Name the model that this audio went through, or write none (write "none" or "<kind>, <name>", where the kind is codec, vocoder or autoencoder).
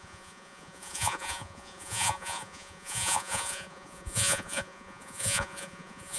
vocoder, Vocos